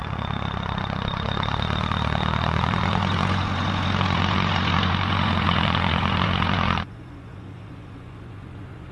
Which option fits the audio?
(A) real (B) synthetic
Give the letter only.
B